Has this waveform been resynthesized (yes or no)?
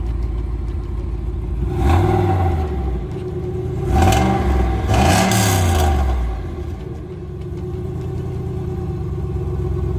no